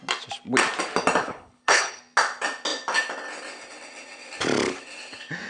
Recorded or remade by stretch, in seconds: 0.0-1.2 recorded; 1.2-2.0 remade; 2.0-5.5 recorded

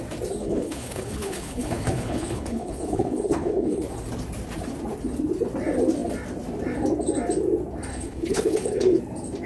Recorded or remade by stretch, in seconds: 0.0-0.4 recorded; 0.4-3.9 remade; 3.9-7.9 recorded; 7.9-9.0 remade; 9.0-9.5 recorded

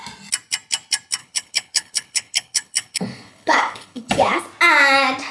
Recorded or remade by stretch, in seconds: 0.0-1.2 recorded; 1.2-4.4 remade; 4.4-5.3 recorded

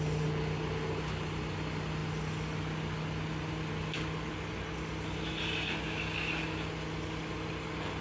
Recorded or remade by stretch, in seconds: 0.0-8.0 recorded

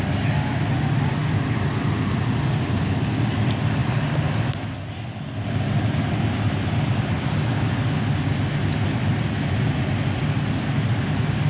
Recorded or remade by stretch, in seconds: 0.0-11.5 recorded